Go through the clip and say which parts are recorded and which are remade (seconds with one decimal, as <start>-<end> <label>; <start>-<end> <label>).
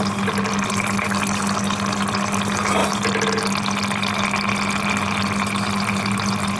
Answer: 0.0-6.6 recorded